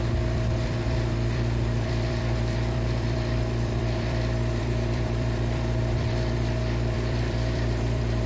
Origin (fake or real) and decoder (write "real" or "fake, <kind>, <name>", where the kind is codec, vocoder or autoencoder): fake, vocoder, BigVGAN v2